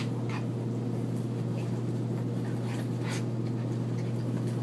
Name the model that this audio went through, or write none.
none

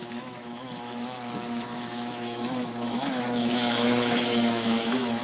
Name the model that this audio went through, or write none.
autoencoder, DAC-VAE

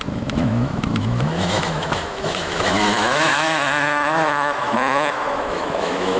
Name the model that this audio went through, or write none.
autoencoder, DAC-VAE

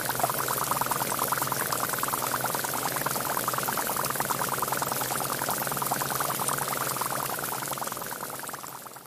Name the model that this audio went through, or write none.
none